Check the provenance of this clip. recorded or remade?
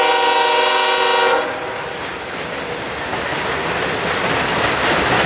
recorded